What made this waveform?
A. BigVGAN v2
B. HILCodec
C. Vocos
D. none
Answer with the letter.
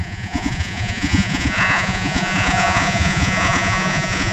C